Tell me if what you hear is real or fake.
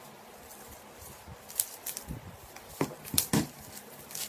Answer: fake